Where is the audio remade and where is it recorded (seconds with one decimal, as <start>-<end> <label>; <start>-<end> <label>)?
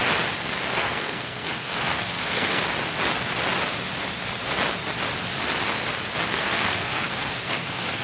0.0-0.7 recorded; 0.7-2.6 remade; 2.6-6.3 recorded; 6.3-8.0 remade